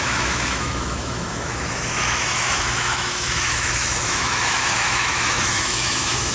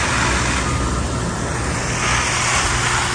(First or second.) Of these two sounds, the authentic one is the second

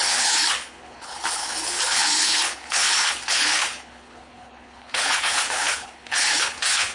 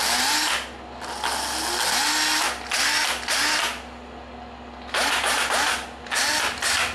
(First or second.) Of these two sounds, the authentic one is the second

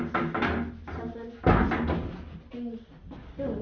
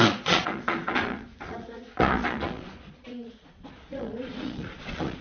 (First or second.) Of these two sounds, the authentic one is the first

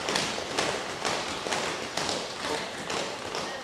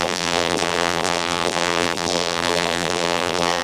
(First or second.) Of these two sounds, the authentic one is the first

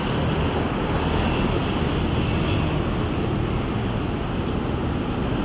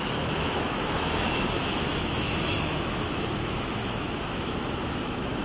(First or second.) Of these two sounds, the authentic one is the first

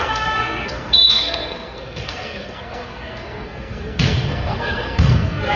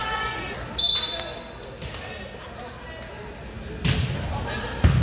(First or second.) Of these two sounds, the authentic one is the second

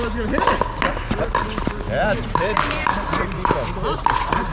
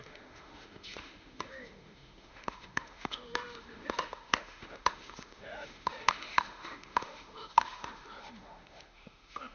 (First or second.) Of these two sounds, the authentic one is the first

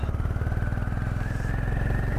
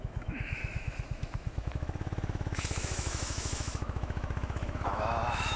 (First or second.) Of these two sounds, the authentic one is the first